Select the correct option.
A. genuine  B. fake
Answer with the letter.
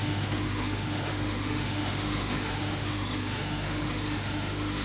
B